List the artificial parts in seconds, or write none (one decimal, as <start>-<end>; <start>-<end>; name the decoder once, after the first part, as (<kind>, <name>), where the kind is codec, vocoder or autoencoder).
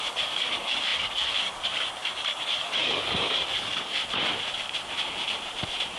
0.0-4.0 (codec, DAC)